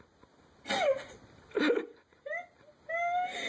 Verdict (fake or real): real